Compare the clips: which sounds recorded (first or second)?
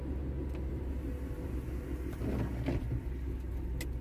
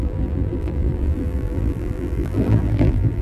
first